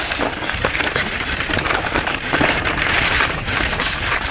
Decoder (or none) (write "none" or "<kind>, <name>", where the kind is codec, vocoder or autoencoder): vocoder, BigVGAN v2